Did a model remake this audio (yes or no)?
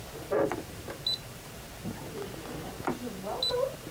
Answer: no